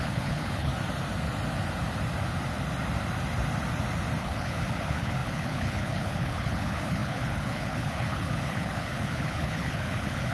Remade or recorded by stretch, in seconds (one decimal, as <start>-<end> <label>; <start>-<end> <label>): 0.0-0.7 remade; 0.7-4.2 recorded; 4.2-10.3 remade